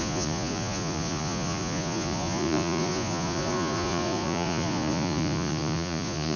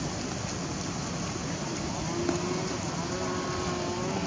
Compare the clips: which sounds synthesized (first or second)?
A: first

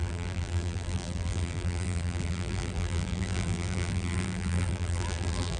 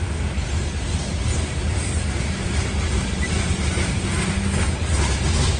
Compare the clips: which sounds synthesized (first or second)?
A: first